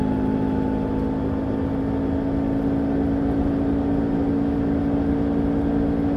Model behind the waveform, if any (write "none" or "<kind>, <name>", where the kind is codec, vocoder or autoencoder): none